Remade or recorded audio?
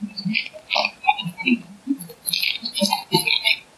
recorded